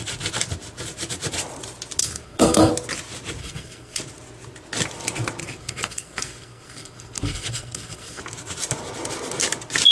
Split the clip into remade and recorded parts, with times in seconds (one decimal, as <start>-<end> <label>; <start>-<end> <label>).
0.0-2.0 recorded; 2.0-2.7 remade; 2.7-3.4 recorded; 3.4-4.0 remade; 4.0-5.4 recorded; 5.4-8.2 remade; 8.2-9.9 recorded